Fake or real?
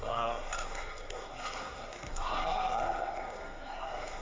fake